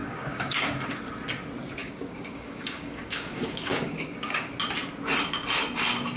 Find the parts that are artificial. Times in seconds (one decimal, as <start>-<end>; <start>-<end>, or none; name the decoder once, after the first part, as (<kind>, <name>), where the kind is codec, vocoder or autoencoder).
0.0-1.0 (codec, DAC); 1.8-4.5